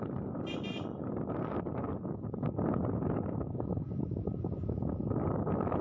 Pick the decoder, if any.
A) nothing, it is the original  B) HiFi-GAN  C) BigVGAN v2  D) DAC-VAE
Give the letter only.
A